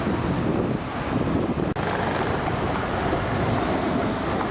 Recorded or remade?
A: recorded